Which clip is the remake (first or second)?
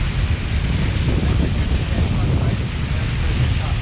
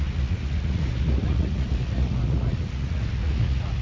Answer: second